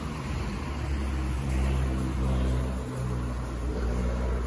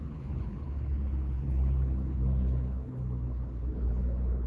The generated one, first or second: second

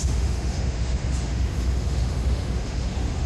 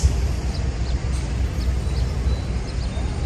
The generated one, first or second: first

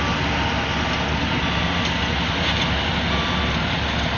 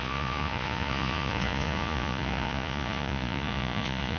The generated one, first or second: second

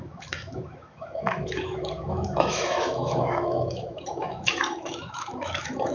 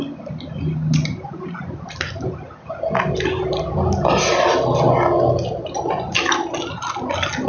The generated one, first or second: first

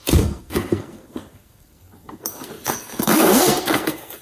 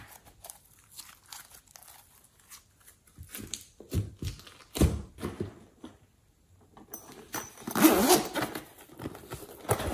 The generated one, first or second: first